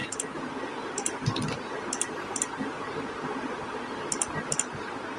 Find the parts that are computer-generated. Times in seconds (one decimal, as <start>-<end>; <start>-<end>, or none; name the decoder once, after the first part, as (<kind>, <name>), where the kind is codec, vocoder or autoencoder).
none